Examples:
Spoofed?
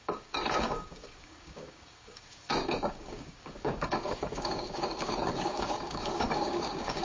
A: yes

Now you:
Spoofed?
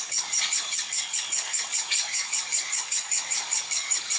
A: yes